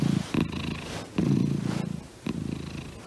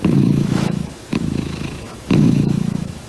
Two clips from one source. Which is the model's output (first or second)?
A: second